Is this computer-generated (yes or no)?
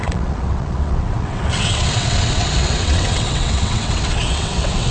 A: yes